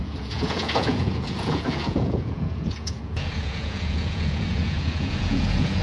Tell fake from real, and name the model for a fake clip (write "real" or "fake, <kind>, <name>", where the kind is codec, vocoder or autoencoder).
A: fake, vocoder, Vocos